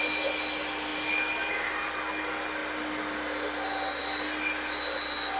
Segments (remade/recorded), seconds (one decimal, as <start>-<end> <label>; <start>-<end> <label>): 0.0-5.4 recorded

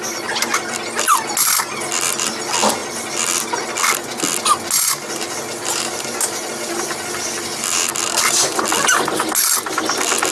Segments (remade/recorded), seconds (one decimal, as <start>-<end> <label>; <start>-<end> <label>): 0.0-10.3 recorded

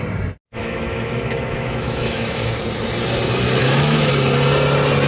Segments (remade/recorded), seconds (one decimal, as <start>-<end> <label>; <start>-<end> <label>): 0.0-0.6 recorded; 0.6-2.5 remade; 2.5-3.6 recorded; 3.6-4.1 remade; 4.1-5.1 recorded

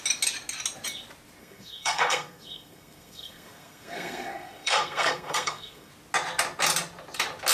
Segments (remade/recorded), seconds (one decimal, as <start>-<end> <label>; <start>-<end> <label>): 0.0-1.4 recorded; 1.4-5.9 remade; 5.9-7.5 recorded

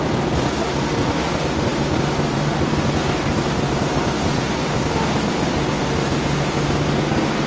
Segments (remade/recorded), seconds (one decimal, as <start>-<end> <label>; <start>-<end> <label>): 0.0-7.5 recorded

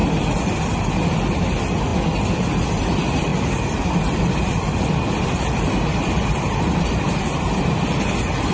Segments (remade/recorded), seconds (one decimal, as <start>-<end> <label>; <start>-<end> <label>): 0.0-3.3 recorded; 3.3-6.9 remade; 6.9-8.5 recorded